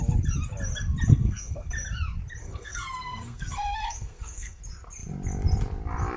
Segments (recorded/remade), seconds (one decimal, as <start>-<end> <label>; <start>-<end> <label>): 0.0-1.1 recorded; 1.1-1.7 remade; 1.7-2.4 recorded; 2.4-4.6 remade; 4.6-6.2 recorded